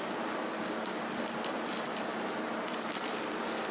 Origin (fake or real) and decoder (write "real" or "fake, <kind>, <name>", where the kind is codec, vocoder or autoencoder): real